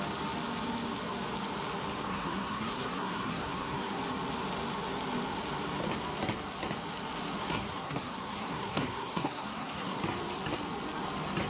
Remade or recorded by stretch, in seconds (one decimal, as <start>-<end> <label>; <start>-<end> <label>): 0.0-2.1 recorded; 2.1-4.0 remade; 4.0-7.4 recorded; 7.4-10.0 remade; 10.0-11.5 recorded